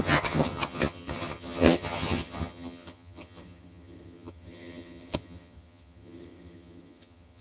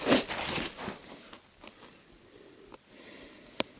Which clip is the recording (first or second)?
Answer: second